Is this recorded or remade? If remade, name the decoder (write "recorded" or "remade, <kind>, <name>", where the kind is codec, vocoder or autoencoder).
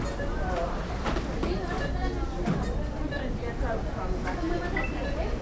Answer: recorded